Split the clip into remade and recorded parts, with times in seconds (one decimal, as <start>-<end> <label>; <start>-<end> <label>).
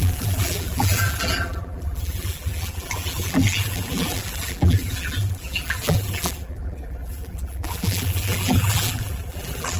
0.0-9.8 remade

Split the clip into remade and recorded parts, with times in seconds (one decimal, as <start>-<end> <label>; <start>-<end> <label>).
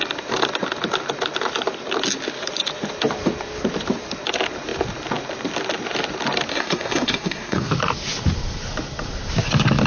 0.0-6.5 recorded; 6.5-7.7 remade; 7.7-9.9 recorded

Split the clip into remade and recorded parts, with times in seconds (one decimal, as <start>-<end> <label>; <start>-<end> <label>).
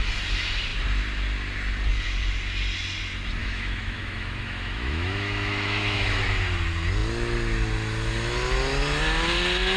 0.0-3.4 recorded; 3.4-6.2 remade; 6.2-9.8 recorded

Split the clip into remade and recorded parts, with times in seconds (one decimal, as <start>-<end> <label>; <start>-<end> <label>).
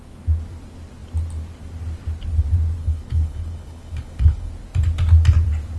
0.0-2.8 recorded; 2.8-4.5 remade; 4.5-5.8 recorded